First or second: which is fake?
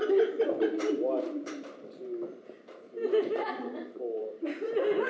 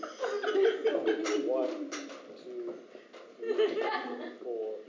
first